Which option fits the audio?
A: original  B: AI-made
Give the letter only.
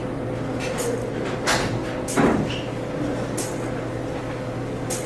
A